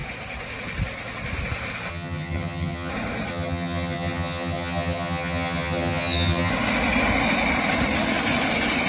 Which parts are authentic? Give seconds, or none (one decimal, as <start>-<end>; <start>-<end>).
0.0-1.9; 2.9-3.3; 6.5-8.9